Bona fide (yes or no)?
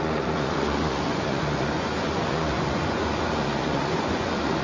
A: no